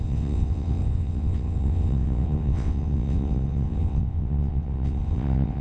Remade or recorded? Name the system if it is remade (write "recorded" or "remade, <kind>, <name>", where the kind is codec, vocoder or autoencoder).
remade, vocoder, WaveNeXt